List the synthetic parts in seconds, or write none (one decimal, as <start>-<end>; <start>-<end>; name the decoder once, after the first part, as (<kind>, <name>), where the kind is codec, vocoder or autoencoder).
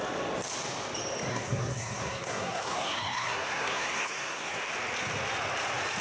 1.3-4.6 (codec, SNAC)